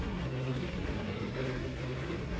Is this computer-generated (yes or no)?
yes